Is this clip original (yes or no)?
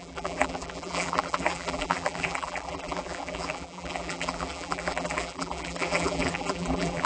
no